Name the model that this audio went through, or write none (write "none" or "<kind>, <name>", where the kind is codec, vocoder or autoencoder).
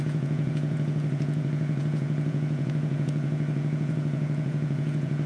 vocoder, Vocos